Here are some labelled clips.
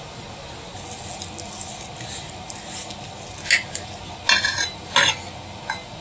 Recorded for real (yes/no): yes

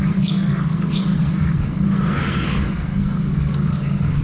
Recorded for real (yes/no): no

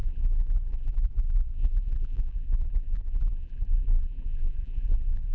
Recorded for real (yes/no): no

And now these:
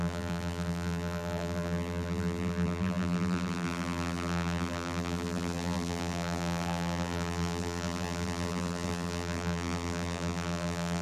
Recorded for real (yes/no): no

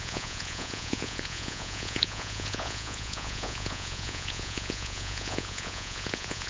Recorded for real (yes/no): no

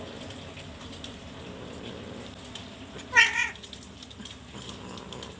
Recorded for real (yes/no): yes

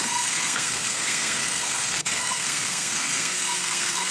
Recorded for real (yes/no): no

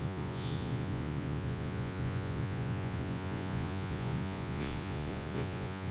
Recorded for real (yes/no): no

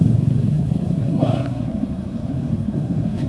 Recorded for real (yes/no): no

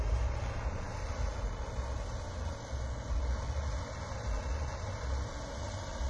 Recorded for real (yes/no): yes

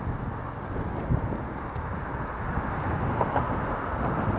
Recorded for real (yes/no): yes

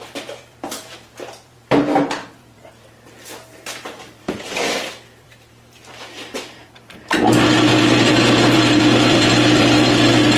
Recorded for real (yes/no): no